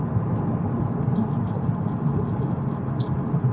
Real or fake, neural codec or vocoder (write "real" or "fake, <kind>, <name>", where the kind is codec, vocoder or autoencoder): real